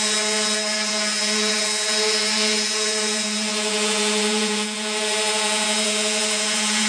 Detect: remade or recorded remade